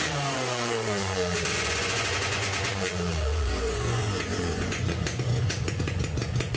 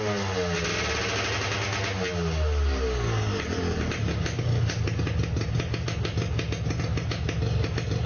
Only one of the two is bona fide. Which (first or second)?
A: second